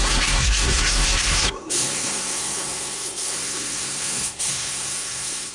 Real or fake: fake